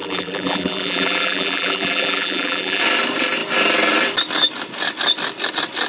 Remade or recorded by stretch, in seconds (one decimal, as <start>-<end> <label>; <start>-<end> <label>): 0.0-2.8 remade; 2.8-5.9 recorded